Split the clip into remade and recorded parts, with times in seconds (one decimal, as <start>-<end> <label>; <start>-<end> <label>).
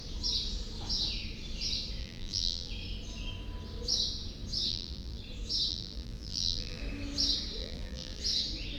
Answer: 0.0-2.0 recorded; 2.0-2.7 remade; 2.7-4.7 recorded; 4.7-5.2 remade; 5.2-5.7 recorded; 5.7-6.8 remade; 6.8-7.6 recorded; 7.6-8.2 remade; 8.2-8.8 recorded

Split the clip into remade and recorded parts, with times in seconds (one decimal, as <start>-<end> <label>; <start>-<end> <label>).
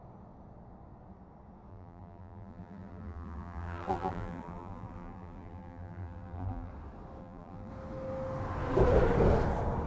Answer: 0.0-1.7 recorded; 1.7-6.7 remade; 6.7-7.2 recorded; 7.2-7.7 remade; 7.7-9.9 recorded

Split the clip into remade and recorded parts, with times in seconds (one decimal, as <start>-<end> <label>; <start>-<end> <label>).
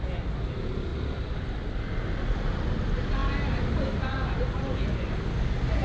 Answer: 0.0-0.9 recorded; 0.9-1.7 remade; 1.7-5.8 recorded